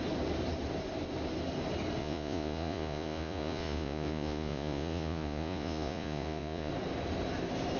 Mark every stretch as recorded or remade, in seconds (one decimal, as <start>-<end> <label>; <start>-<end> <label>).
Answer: 0.0-2.0 recorded; 2.0-6.7 remade; 6.7-7.8 recorded